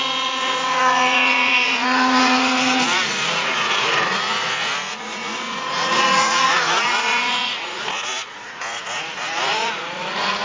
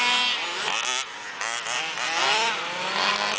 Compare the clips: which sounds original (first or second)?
second